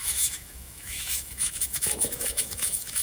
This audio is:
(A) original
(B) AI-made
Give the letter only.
B